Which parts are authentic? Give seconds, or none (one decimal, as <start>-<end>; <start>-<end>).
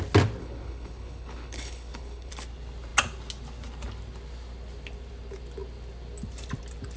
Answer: 0.0-0.4; 2.3-7.0